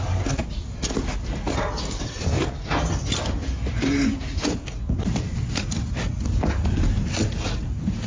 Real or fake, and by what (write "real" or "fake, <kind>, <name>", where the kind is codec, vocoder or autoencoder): real